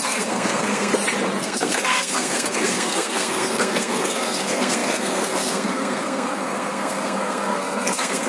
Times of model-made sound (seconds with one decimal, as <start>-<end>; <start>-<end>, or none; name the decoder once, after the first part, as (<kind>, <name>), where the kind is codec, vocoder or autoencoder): 0.0-0.9 (codec, SNAC); 1.4-8.3